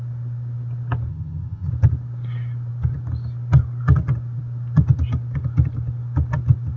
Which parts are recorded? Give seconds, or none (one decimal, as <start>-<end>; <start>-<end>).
0.0-1.1; 1.7-6.8